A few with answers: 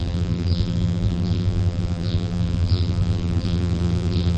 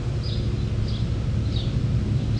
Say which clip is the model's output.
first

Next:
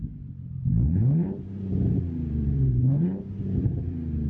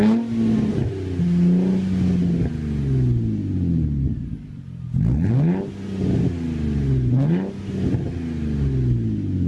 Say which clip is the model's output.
first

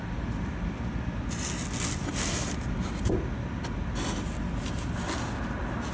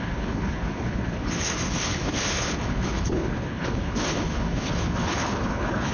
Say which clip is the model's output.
second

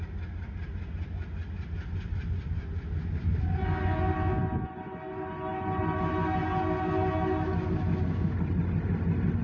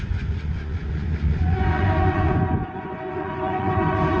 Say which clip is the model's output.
second